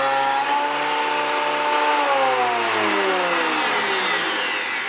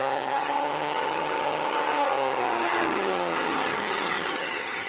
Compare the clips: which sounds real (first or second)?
first